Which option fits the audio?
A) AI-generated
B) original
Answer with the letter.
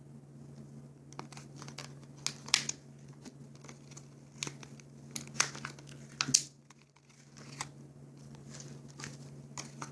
B